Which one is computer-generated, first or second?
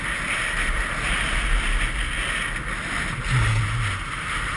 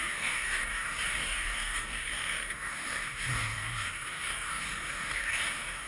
second